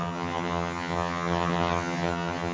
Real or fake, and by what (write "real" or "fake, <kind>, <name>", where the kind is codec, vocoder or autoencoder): fake, vocoder, HiFi-GAN